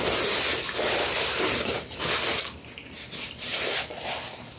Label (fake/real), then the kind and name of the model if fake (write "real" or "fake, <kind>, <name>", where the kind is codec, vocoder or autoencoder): real